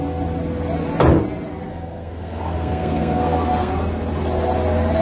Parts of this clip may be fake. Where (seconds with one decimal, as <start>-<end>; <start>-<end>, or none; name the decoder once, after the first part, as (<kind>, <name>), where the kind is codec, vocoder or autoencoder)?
1.7-3.7 (codec, SNAC)